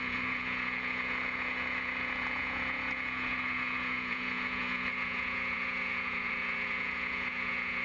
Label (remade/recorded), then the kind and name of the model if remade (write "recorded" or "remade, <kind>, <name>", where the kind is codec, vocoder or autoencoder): remade, vocoder, Vocos